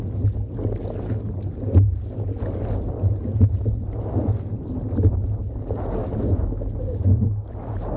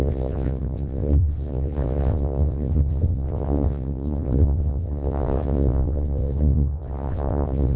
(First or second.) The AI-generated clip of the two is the second